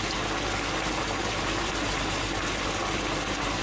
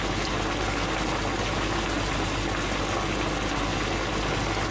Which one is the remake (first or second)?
first